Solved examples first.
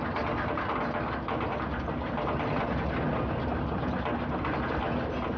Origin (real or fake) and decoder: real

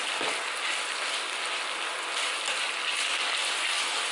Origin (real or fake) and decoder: real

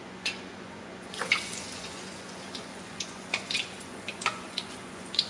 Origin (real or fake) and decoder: fake, vocoder, Vocos